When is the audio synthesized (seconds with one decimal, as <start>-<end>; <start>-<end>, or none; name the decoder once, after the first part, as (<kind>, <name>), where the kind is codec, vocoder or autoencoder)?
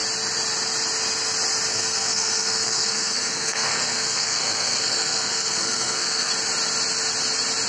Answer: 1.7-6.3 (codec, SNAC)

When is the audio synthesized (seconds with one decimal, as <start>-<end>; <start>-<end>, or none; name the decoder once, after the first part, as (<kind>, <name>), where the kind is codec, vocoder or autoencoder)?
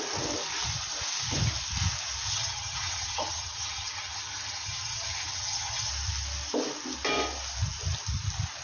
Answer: 2.3-5.9 (vocoder, HiFi-GAN)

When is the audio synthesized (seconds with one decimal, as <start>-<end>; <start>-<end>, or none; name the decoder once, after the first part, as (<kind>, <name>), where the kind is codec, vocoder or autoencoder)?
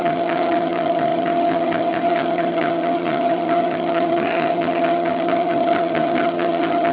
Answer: 0.0-6.9 (vocoder, HiFi-GAN)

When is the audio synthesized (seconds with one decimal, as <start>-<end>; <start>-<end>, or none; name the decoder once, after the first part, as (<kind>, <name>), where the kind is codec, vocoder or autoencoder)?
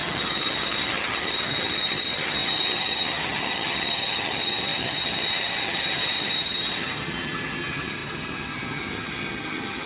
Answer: 0.0-9.9 (vocoder, HiFi-GAN)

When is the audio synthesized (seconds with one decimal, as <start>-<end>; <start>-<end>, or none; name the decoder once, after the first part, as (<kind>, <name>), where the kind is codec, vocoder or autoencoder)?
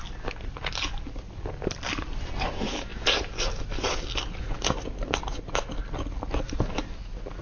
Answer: none